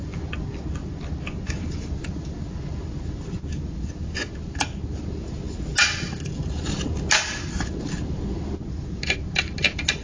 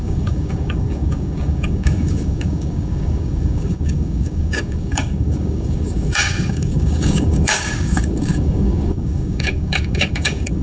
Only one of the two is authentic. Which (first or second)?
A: first